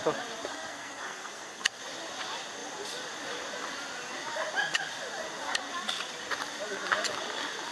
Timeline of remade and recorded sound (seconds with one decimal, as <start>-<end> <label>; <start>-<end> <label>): 0.0-0.5 recorded; 0.5-1.8 remade; 1.8-7.7 recorded